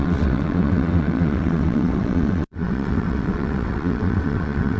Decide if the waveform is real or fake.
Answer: fake